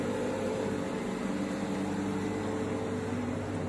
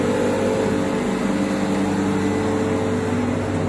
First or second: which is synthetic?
first